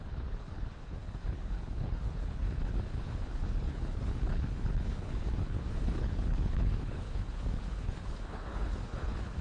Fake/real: fake